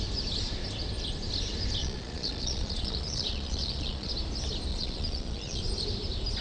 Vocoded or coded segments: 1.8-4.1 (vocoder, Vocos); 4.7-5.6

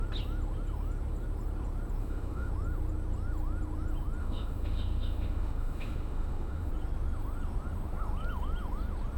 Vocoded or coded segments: 2.0-2.5 (autoencoder, DAC-VAE); 4.2-6.7